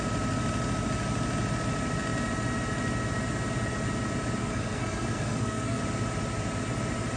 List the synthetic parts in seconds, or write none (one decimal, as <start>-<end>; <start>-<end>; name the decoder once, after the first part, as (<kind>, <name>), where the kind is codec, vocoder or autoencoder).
4.4-5.8 (codec, SNAC)